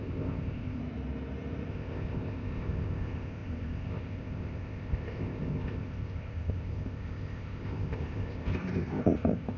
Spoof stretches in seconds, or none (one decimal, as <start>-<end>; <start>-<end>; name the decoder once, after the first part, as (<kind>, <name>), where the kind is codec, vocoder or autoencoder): 0.0-0.8 (codec, ZipCodec); 1.7-9.6